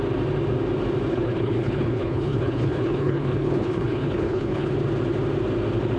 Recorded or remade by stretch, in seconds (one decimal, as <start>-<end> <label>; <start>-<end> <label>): 0.0-1.1 recorded; 1.1-4.7 remade; 4.7-6.0 recorded